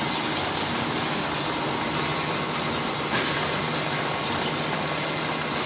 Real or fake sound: real